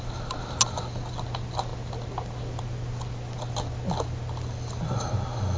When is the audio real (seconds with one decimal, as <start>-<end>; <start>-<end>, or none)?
0.0-5.6